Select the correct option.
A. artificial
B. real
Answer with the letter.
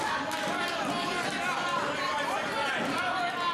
B